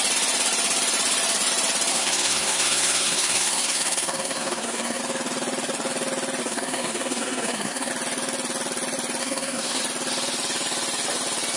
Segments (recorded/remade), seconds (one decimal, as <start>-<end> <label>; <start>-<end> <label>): 0.0-1.9 recorded; 1.9-5.0 remade; 5.0-6.4 recorded; 6.4-7.9 remade; 7.9-9.2 recorded; 9.2-9.8 remade; 9.8-11.6 recorded